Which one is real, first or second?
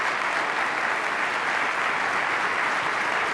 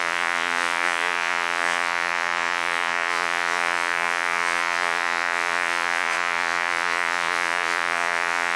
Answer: first